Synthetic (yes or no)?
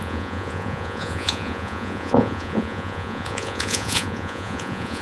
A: yes